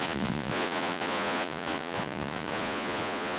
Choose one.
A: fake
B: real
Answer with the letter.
A